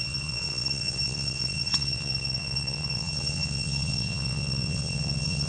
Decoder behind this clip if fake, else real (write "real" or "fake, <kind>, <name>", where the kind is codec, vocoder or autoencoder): fake, vocoder, Vocos